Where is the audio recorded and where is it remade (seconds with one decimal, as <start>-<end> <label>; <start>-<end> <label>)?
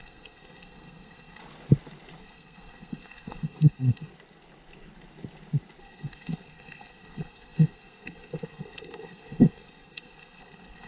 0.0-1.4 remade; 1.4-2.2 recorded; 2.2-4.1 remade; 4.1-5.8 recorded; 5.8-10.9 remade